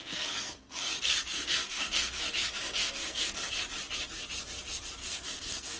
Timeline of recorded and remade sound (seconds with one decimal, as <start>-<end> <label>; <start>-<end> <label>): 0.0-3.5 remade; 3.5-5.0 recorded; 5.0-5.8 remade

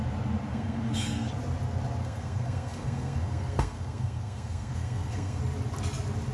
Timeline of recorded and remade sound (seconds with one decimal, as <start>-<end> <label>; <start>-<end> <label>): 0.0-0.5 recorded; 0.5-1.3 remade; 1.3-2.0 recorded; 2.0-5.4 remade; 5.4-6.3 recorded

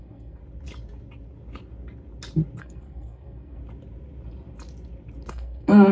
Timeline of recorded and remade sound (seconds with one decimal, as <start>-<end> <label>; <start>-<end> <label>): 0.0-0.4 remade; 0.4-2.6 recorded; 2.6-3.6 remade; 3.6-5.3 recorded; 5.3-5.9 remade

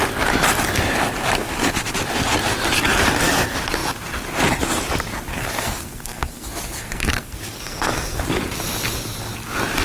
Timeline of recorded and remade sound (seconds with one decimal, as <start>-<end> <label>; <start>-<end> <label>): 0.0-5.3 recorded; 5.3-8.2 remade; 8.2-9.8 recorded

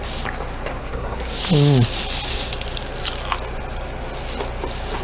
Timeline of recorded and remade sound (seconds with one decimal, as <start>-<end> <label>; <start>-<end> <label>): 0.0-0.8 recorded; 0.8-1.4 remade; 1.4-5.0 recorded

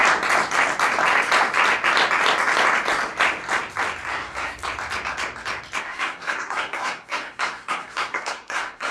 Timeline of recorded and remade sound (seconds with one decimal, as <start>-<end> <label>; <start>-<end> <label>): 0.0-4.1 recorded; 4.1-4.6 remade; 4.6-5.8 recorded; 5.8-8.9 remade

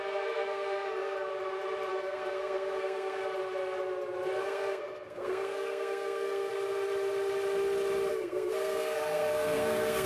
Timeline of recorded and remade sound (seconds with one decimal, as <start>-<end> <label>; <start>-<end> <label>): 0.0-1.3 remade; 1.3-1.9 recorded; 1.9-3.2 remade; 3.2-4.4 recorded; 4.4-6.5 remade; 6.5-8.1 recorded; 8.1-10.1 remade

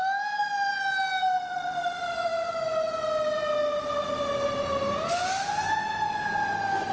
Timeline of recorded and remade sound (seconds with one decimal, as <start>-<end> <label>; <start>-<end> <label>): 0.0-6.9 recorded